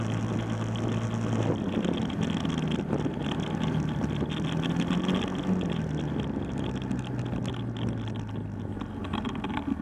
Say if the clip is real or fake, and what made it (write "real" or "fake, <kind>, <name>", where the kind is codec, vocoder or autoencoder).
real